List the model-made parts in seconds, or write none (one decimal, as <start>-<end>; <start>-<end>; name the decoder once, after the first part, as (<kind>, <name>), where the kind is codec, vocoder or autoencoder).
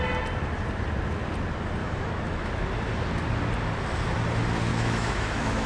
1.8-2.5 (autoencoder, DAC-VAE); 4.7-5.7